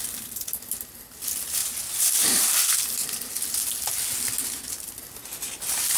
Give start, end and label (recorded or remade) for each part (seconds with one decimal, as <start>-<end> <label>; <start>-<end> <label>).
0.0-6.0 recorded